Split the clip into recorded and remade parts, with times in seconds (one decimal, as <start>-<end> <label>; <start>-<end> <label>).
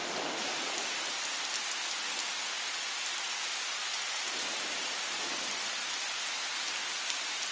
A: 0.0-3.8 recorded; 3.8-6.1 remade; 6.1-7.5 recorded